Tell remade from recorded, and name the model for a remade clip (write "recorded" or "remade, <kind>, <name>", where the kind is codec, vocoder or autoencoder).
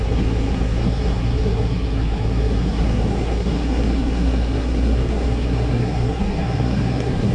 remade, codec, SNAC